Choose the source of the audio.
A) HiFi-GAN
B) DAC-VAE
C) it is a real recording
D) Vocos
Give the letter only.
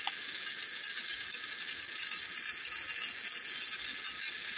C